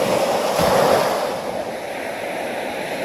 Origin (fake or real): real